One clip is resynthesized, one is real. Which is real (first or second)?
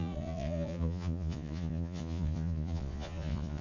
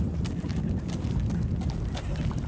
second